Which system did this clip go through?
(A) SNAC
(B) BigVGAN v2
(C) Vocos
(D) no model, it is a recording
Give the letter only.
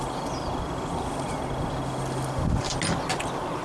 D